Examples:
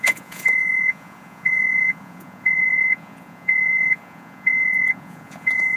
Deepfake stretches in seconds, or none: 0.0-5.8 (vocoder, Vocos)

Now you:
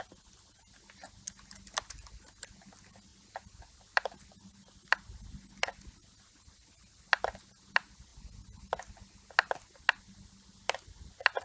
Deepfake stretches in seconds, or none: none

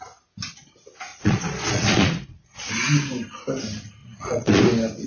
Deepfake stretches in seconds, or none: 1.1-2.7 (vocoder, Vocos); 4.0-4.6